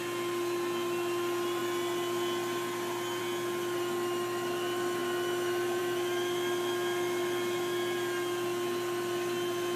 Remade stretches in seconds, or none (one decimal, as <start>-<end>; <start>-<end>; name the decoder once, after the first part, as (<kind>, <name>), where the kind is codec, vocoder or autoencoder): none